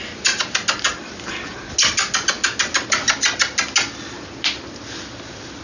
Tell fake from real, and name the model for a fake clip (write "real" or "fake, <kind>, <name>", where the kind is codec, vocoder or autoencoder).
real